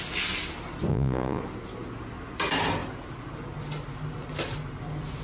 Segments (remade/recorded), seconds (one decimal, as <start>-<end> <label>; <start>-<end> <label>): 0.0-0.9 recorded; 0.9-1.4 remade; 1.4-5.2 recorded